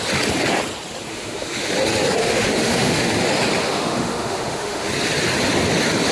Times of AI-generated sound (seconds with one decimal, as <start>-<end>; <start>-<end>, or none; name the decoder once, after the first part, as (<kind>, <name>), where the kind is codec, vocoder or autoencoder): 1.1-1.7 (autoencoder, DAC-VAE); 2.2-3.1; 3.6-4.9